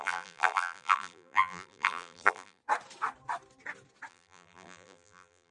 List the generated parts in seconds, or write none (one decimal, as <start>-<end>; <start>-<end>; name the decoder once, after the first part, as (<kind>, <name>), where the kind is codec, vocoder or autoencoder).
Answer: 0.0-2.6 (vocoder, BigVGAN v2); 4.1-5.5